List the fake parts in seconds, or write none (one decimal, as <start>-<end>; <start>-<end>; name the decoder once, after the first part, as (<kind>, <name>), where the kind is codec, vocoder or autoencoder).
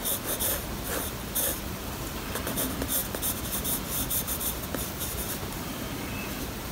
none